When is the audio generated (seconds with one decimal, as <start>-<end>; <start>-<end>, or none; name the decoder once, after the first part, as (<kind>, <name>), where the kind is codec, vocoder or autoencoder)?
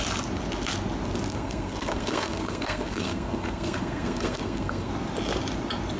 1.3-4.9 (codec, SNAC)